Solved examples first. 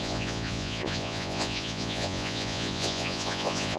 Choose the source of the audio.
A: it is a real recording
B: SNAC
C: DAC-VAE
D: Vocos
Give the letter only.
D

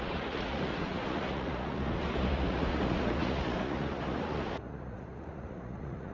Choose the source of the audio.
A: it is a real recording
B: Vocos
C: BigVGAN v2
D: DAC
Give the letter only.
B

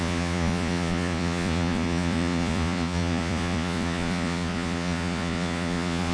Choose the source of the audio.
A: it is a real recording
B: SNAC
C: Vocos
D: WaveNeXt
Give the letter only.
C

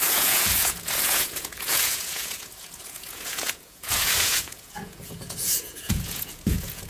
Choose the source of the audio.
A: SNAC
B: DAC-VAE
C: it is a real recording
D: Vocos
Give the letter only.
D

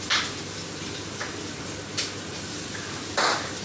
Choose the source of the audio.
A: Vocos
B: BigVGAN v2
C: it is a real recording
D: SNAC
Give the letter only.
C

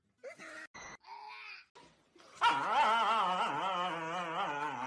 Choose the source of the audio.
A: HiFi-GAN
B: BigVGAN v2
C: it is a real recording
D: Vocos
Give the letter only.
C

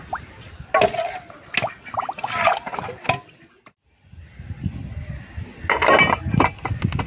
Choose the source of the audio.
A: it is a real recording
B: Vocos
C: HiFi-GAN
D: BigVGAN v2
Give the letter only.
A